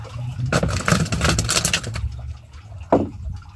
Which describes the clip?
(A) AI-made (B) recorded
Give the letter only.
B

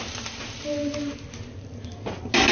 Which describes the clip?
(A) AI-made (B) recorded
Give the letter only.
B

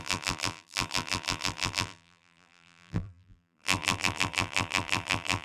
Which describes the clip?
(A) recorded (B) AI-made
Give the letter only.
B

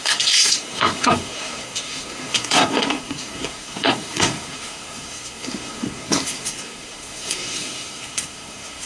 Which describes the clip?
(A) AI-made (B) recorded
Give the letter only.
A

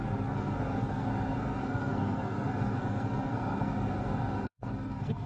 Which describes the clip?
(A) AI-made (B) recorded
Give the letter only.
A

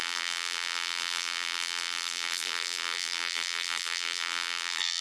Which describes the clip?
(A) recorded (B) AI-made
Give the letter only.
B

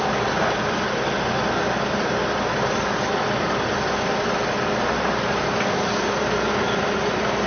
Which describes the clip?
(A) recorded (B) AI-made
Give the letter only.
A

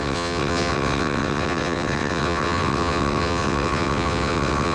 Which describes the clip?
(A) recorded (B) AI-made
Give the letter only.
B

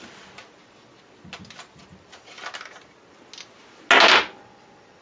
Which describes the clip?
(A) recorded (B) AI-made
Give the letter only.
A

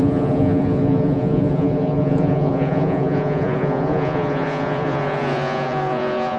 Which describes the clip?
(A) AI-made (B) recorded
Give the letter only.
A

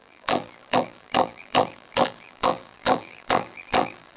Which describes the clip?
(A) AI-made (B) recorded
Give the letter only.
A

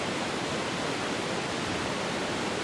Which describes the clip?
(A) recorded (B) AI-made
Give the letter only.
A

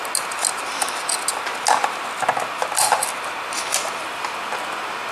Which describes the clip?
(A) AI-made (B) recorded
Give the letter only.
B